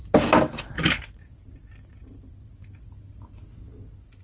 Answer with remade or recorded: recorded